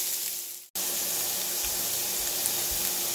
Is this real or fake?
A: real